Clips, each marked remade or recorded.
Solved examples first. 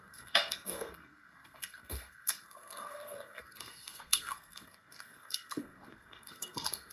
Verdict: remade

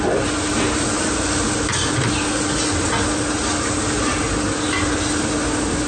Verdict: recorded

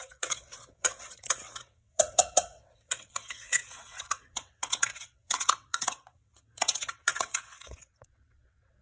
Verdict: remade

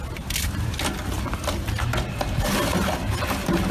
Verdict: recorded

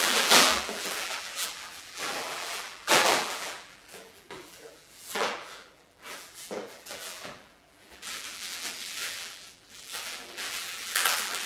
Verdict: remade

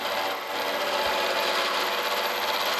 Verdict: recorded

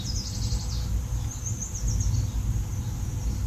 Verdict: recorded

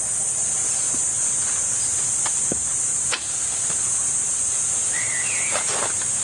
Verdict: recorded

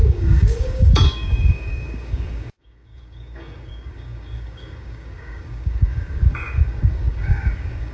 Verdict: remade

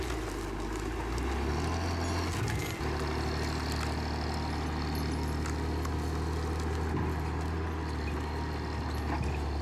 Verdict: recorded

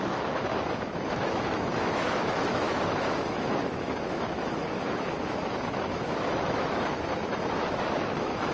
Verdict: remade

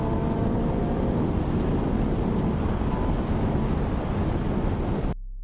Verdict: recorded